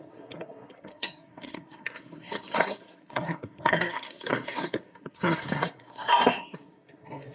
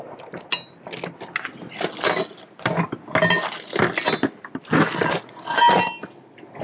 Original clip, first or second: second